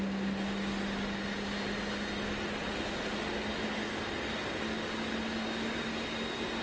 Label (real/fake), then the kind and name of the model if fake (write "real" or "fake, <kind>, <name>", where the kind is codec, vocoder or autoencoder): real